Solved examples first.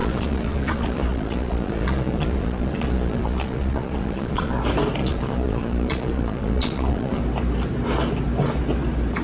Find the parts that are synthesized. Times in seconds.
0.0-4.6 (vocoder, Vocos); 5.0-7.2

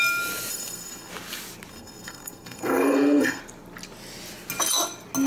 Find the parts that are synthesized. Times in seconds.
0.5-1.1 (codec, SNAC); 1.7-3.4

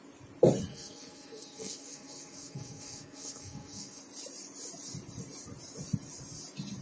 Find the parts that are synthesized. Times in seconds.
0.7-4.0 (codec, SNAC)

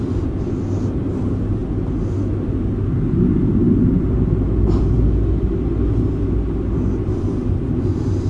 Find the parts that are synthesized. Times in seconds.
none

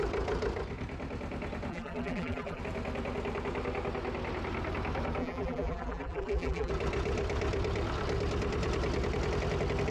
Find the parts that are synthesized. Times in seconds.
1.7-2.6 (vocoder, BigVGAN v2); 5.2-6.7

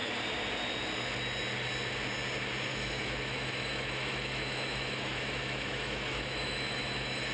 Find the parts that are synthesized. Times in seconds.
2.7-7.3 (autoencoder, DAC-VAE)

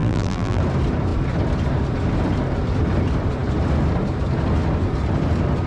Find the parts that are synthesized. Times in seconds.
0.0-0.6 (vocoder, BigVGAN v2)

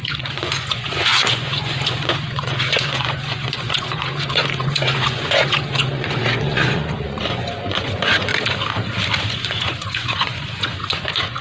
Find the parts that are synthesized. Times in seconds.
0.0-8.3 (vocoder, Vocos); 9.2-11.4